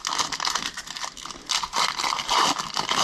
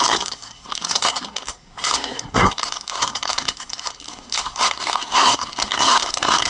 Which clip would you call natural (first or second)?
first